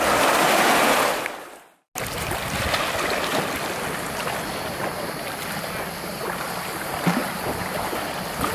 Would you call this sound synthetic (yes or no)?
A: no